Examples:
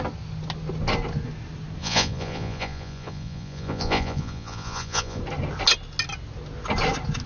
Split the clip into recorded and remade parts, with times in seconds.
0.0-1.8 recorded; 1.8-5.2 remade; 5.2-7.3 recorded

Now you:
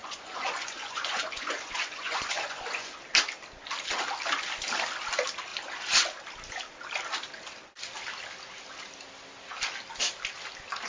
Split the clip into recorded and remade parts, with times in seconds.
0.0-3.0 remade; 3.0-10.9 recorded

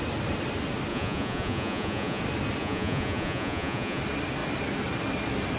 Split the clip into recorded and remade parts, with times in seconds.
0.0-0.9 recorded; 0.9-2.2 remade; 2.2-2.6 recorded; 2.6-4.0 remade; 4.0-5.6 recorded

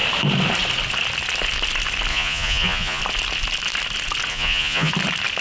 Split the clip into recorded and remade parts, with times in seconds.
0.0-2.1 recorded; 2.1-3.0 remade; 3.0-4.3 recorded; 4.3-4.9 remade; 4.9-5.4 recorded

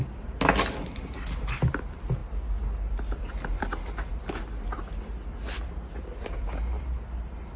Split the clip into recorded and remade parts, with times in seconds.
0.0-7.6 recorded

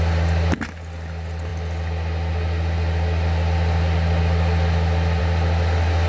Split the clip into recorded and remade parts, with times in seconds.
0.0-6.1 recorded

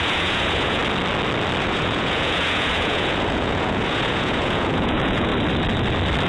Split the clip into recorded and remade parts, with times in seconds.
0.0-0.8 remade; 0.8-1.6 recorded; 1.6-5.3 remade; 5.3-6.3 recorded